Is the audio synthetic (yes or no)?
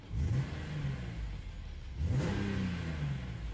no